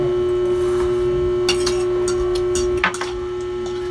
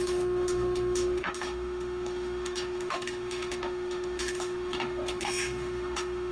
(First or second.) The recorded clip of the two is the first